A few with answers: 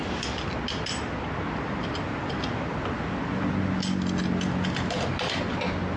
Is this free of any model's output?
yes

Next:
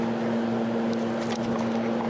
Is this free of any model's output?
yes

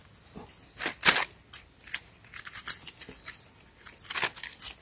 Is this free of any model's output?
yes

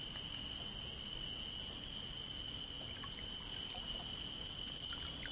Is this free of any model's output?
yes